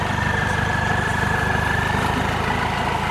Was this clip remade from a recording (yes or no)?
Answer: no